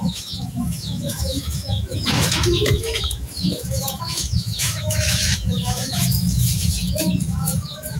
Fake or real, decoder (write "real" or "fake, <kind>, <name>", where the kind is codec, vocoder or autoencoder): fake, autoencoder, DAC-VAE